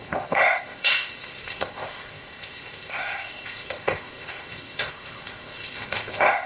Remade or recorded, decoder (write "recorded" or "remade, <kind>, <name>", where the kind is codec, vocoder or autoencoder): remade, codec, ZipCodec